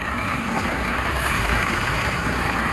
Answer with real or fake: fake